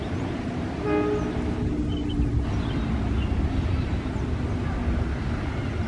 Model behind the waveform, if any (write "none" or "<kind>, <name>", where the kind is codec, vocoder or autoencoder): none